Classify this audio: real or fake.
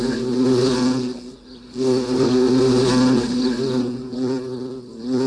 fake